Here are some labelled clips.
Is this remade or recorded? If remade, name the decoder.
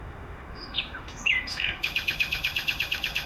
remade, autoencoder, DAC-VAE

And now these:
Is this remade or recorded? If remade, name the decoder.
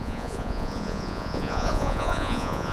remade, vocoder, Vocos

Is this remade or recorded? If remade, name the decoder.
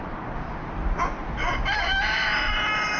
recorded